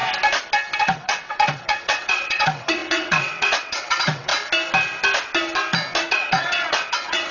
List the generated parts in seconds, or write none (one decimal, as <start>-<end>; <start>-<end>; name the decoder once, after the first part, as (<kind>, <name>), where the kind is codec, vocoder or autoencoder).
0.8-4.3 (vocoder, WaveNeXt); 6.1-7.3